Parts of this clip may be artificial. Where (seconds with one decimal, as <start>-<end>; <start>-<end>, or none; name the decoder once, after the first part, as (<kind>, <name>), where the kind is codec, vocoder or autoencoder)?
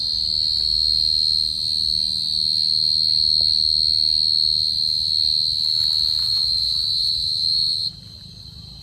6.2-7.9 (autoencoder, DAC-VAE)